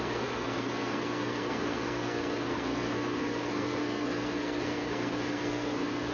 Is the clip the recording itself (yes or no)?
no